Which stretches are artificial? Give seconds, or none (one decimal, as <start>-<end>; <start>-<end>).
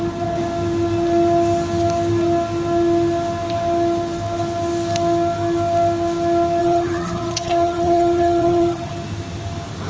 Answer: 6.6-8.9